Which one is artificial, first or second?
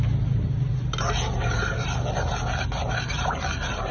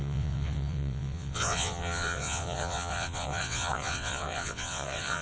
second